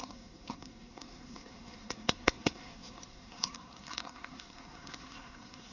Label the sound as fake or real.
fake